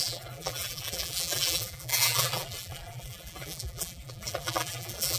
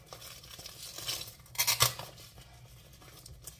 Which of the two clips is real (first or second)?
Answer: second